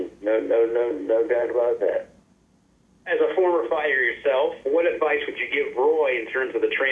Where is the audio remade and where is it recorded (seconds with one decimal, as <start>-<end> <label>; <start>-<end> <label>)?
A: 0.0-6.9 recorded